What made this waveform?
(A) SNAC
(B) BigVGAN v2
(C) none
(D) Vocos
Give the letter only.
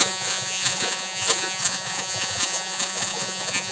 D